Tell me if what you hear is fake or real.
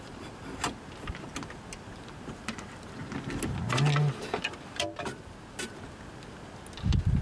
real